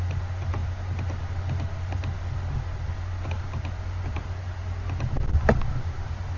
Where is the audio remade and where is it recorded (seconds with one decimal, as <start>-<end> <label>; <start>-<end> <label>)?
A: 0.0-6.4 recorded